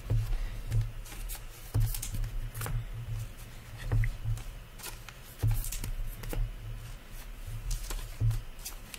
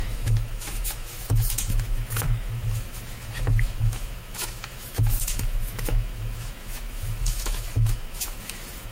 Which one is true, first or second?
first